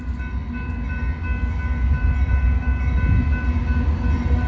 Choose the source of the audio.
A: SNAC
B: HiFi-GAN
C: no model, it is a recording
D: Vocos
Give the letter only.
C